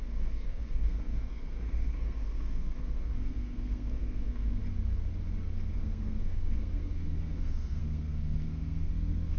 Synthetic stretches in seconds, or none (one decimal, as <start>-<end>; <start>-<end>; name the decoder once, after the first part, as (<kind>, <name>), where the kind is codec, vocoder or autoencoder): 0.0-4.6 (codec, SNAC); 5.7-9.4

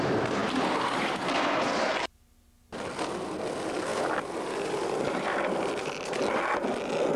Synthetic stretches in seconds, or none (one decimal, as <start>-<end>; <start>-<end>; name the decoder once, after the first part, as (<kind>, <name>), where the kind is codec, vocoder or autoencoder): 3.9-6.1 (vocoder, BigVGAN v2)

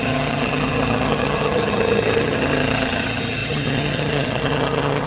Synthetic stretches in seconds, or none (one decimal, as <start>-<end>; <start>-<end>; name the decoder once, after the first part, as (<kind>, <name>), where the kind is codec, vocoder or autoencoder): 0.0-5.1 (vocoder, HiFi-GAN)

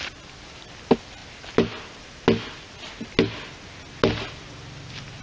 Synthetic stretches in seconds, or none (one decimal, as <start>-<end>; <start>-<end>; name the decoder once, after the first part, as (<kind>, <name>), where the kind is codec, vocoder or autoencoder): none

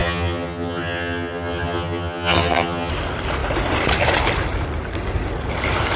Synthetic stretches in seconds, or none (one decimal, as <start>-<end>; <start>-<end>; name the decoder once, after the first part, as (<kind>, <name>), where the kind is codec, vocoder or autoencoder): 0.0-2.9 (vocoder, HiFi-GAN)

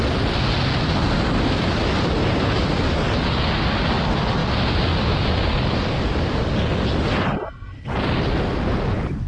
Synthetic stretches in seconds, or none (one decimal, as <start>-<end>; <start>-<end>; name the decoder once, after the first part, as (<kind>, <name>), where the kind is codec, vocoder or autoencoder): none

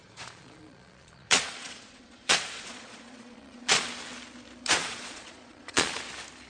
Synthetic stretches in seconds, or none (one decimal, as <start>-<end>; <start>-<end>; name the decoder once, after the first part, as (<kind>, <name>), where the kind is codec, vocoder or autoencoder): 0.0-3.9 (vocoder, Vocos); 4.8-6.0